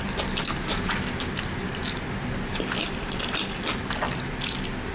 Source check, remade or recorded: recorded